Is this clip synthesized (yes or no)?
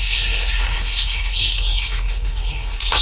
yes